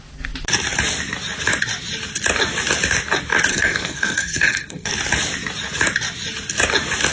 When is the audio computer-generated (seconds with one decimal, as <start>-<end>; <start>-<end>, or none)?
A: 3.5-4.9